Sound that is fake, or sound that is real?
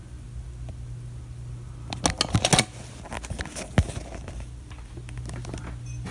real